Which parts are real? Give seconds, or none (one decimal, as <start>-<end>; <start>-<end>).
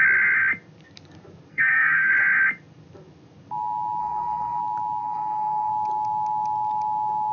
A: 0.0-1.5; 2.1-4.0; 4.6-5.0; 5.7-7.3